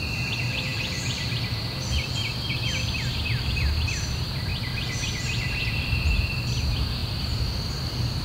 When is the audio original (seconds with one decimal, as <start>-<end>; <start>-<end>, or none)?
0.0-8.2